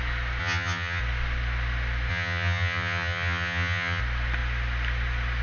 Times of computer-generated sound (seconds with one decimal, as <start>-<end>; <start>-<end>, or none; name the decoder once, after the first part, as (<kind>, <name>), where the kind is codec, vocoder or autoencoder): 0.4-1.0 (vocoder, HiFi-GAN); 2.1-4.0